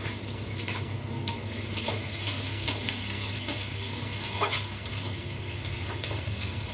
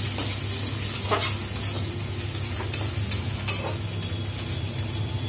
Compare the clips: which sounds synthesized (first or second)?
first